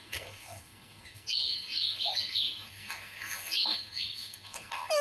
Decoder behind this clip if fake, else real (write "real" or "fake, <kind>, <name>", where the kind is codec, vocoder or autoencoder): fake, codec, SNAC